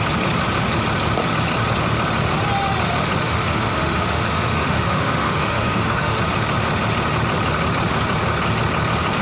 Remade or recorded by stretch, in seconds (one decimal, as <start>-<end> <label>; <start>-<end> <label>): 0.0-3.2 recorded; 3.2-6.2 remade; 6.2-9.2 recorded